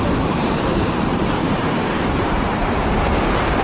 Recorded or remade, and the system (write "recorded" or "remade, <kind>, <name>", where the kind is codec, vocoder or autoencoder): remade, vocoder, BigVGAN v2